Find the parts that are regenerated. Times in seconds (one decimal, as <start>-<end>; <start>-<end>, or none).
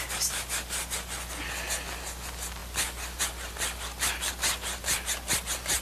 none